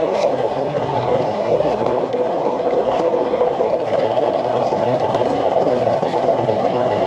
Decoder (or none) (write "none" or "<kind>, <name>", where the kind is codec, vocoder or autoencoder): codec, SNAC